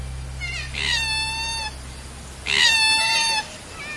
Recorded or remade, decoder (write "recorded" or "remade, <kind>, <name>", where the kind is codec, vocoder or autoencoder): recorded